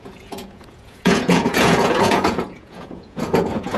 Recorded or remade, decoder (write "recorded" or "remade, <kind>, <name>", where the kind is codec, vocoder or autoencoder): remade, vocoder, Vocos